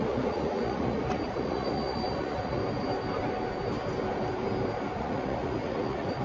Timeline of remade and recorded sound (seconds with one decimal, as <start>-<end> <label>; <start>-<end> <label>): 0.0-2.6 remade; 2.6-5.0 recorded; 5.0-6.2 remade